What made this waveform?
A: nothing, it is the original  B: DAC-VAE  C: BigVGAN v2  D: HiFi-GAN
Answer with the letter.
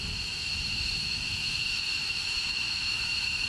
B